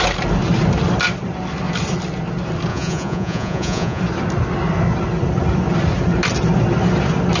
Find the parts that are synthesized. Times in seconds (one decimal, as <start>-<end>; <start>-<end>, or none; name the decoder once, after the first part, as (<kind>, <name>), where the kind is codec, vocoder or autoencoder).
2.7-4.0 (vocoder, Vocos)